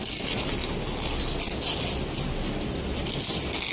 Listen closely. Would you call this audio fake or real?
real